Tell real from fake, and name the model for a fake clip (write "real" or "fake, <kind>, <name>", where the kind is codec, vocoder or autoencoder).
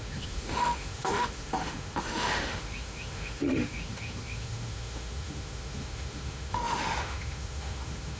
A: fake, autoencoder, DAC-VAE